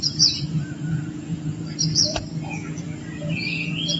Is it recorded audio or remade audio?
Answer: remade